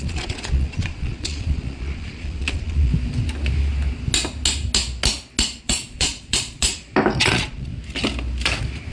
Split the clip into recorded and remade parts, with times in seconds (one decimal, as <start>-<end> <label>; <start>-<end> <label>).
0.0-2.9 remade; 2.9-5.6 recorded; 5.6-6.7 remade; 6.7-7.2 recorded; 7.2-7.7 remade; 7.7-8.9 recorded